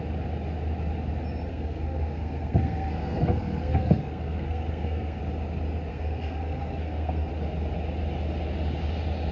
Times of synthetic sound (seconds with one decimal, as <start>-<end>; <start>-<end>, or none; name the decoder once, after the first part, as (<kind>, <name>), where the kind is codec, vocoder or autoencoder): 1.5-5.2 (codec, SNAC); 5.9-7.3